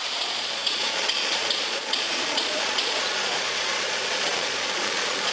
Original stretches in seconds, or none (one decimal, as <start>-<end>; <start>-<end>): none